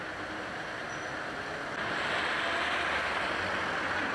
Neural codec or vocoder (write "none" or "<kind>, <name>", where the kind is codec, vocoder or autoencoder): none